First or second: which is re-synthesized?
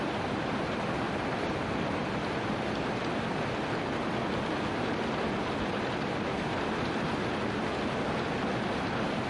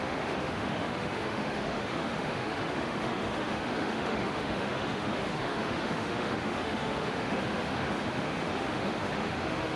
second